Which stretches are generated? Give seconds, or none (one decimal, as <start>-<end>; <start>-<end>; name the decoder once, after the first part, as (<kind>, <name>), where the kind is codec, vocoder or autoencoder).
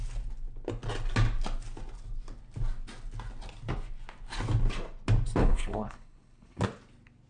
5.4-6.6 (codec, HILCodec)